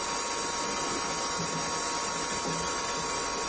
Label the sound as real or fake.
real